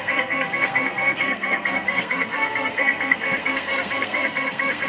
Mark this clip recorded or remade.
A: remade